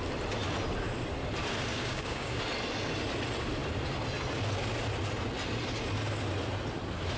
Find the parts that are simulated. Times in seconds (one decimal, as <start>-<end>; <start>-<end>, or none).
1.7-2.4